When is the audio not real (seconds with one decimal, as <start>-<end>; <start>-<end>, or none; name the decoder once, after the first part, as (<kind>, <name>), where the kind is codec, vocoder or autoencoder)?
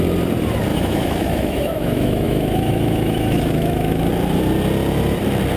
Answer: 0.7-4.1 (autoencoder, DAC-VAE)